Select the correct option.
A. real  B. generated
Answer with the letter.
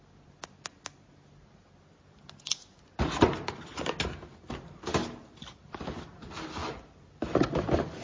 A